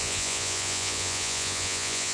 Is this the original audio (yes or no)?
no